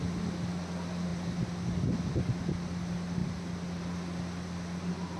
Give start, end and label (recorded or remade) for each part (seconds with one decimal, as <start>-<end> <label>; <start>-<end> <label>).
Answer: 0.0-5.2 recorded